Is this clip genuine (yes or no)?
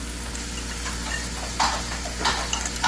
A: yes